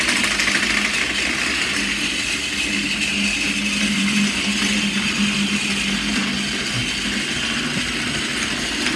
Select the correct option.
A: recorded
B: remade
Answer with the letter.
A